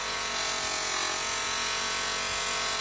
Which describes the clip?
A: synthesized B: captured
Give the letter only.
A